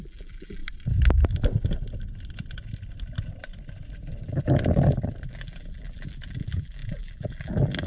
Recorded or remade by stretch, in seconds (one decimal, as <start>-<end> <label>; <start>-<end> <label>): 0.0-0.6 remade; 0.6-5.3 recorded; 5.3-7.9 remade